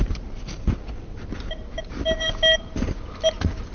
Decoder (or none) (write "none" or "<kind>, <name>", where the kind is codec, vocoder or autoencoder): none